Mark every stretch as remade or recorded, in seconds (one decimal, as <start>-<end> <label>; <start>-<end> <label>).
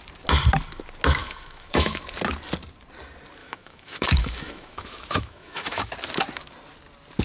0.0-1.2 recorded; 1.2-2.0 remade; 2.0-3.4 recorded; 3.4-5.9 remade; 5.9-7.2 recorded